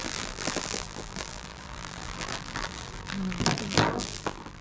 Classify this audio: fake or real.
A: fake